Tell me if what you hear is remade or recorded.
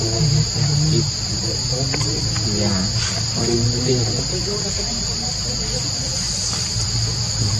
recorded